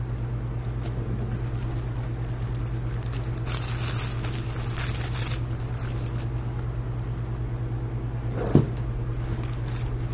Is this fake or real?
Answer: real